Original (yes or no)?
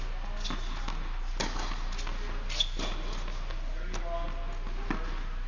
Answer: yes